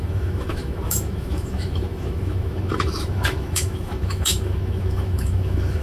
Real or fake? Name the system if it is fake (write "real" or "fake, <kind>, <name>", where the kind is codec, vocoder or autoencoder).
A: fake, autoencoder, DAC-VAE